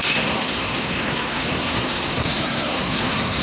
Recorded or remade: remade